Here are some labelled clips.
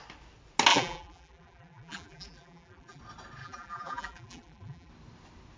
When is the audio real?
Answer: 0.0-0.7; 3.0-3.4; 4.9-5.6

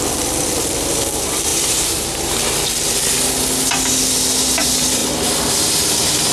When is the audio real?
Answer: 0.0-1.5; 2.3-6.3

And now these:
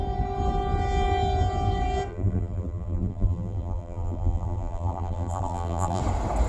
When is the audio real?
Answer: 0.0-2.1; 6.0-6.5